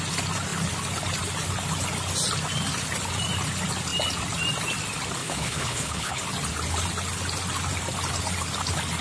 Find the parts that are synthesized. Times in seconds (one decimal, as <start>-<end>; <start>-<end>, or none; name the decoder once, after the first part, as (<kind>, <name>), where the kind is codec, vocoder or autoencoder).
5.2-6.2 (codec, HILCodec)